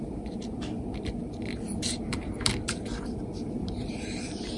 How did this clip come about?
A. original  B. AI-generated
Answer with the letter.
B